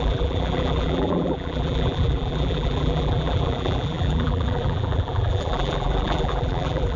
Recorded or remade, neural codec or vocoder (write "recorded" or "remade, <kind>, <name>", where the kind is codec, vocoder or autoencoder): remade, vocoder, BigVGAN v2